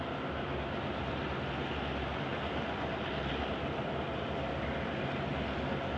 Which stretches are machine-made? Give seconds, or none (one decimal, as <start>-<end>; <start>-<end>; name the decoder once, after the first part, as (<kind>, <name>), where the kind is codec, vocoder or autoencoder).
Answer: none